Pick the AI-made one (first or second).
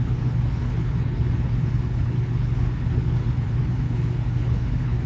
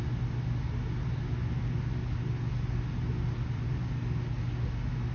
first